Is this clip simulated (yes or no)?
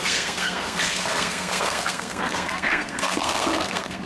yes